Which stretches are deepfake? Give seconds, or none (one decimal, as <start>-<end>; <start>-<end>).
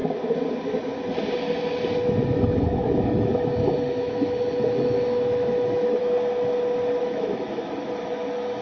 2.2-6.0; 7.0-8.6